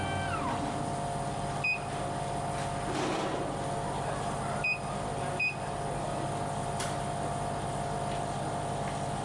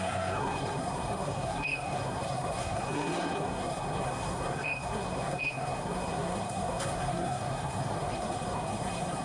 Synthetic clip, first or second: second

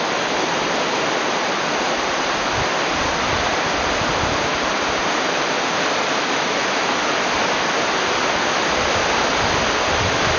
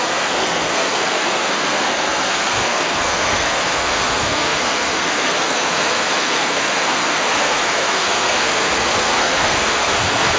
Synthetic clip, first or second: second